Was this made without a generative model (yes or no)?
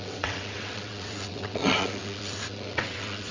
no